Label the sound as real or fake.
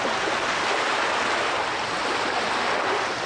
real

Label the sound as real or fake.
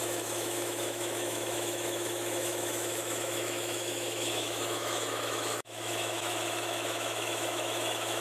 fake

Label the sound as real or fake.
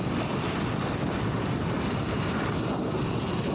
real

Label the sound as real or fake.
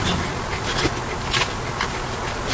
real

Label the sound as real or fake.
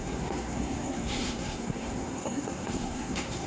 fake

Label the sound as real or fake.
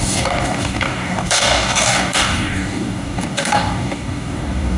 fake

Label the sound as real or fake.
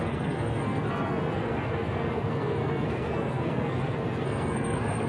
fake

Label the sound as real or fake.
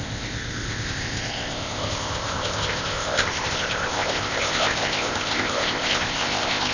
fake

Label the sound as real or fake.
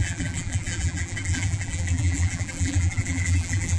fake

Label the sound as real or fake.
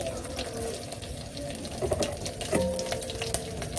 real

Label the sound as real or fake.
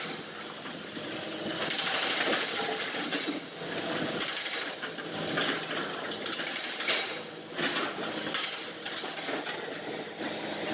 real